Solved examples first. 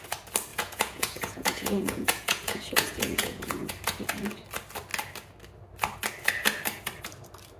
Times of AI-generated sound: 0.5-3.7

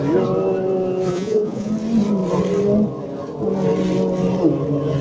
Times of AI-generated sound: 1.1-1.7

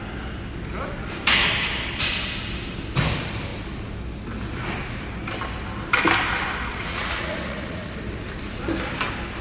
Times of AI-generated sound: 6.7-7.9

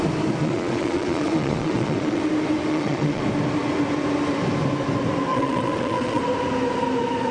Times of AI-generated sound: 0.4-2.2; 2.7-3.2; 5.3-6.2

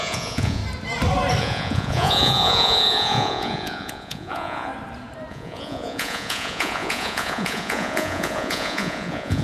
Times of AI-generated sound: 0.0-0.6; 1.4-4.7; 5.3-9.4